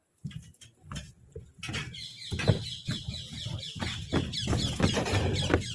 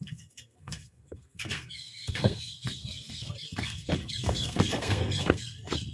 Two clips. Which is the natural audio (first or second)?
first